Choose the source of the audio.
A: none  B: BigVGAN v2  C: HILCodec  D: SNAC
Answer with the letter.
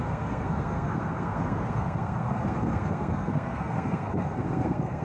D